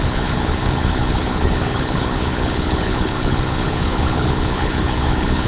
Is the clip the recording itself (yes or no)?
no